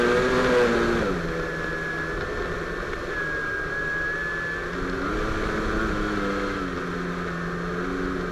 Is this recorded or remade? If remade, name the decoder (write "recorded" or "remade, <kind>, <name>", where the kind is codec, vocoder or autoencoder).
recorded